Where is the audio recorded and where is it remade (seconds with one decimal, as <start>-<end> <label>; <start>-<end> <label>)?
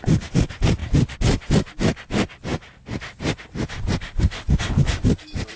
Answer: 0.0-5.6 recorded